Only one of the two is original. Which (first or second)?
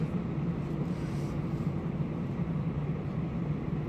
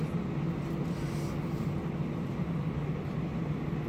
second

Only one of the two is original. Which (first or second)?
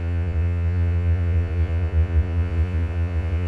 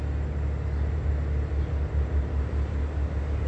second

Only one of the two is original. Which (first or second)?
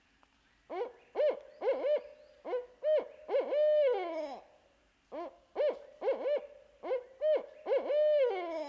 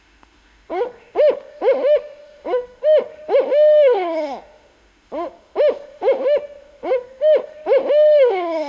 first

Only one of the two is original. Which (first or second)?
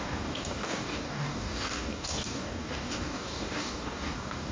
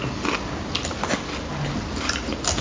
second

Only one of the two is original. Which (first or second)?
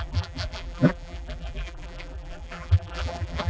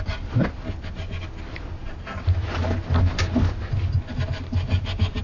second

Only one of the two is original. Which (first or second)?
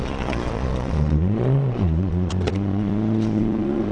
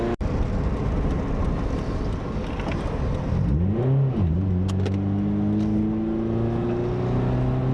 second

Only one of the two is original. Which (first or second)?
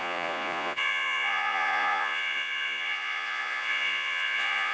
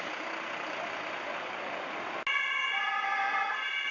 second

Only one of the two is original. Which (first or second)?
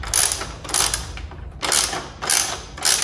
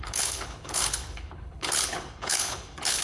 first